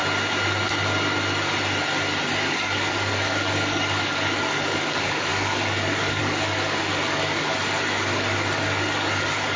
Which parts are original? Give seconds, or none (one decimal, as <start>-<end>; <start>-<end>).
0.0-2.3

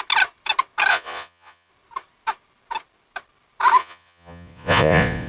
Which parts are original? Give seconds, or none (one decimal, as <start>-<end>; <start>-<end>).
0.0-0.9; 1.7-3.8